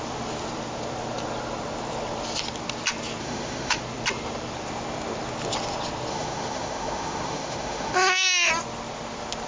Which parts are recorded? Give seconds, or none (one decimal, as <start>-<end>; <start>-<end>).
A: 0.0-3.2; 3.8-6.1; 8.5-9.5